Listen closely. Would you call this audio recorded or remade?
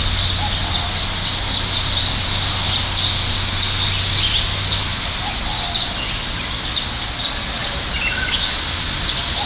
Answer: recorded